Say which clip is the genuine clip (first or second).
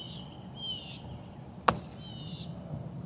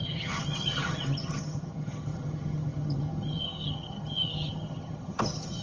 first